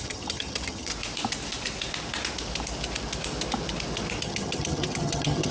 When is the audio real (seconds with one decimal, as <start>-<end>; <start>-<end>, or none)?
0.9-4.2

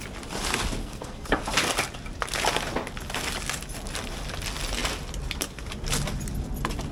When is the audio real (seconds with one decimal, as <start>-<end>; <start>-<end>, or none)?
0.0-0.8; 1.4-6.9

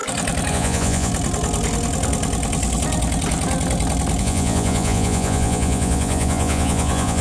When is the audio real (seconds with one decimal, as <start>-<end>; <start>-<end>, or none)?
0.0-0.5; 1.1-4.2

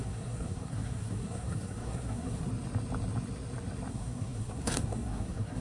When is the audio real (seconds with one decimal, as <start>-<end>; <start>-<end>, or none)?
2.5-3.9

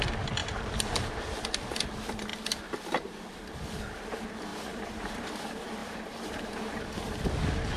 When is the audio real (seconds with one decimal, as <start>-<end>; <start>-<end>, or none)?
0.0-0.4; 1.0-4.5; 5.3-5.8; 6.8-7.8